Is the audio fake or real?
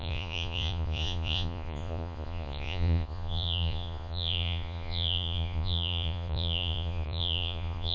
fake